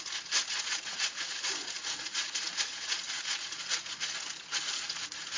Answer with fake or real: fake